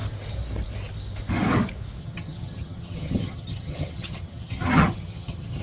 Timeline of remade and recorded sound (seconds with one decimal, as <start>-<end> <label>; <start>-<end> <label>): 0.0-2.0 recorded; 2.0-5.6 remade